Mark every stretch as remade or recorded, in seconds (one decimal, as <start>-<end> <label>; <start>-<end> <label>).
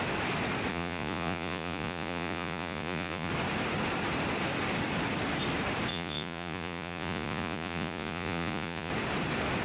0.0-0.7 recorded; 0.7-3.3 remade; 3.3-5.9 recorded; 5.9-8.9 remade; 8.9-9.6 recorded